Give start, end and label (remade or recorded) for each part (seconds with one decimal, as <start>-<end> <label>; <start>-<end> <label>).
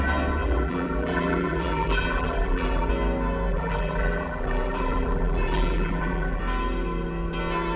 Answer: 0.0-0.4 recorded; 0.4-2.9 remade; 2.9-3.5 recorded; 3.5-6.4 remade; 6.4-7.8 recorded